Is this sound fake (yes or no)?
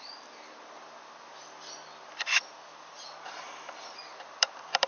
yes